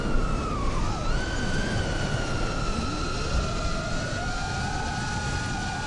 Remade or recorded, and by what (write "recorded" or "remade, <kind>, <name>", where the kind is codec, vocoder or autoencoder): recorded